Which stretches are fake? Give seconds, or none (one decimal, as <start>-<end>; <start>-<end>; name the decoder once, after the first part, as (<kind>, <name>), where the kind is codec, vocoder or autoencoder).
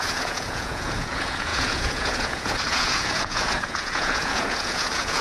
0.0-5.2 (vocoder, Vocos)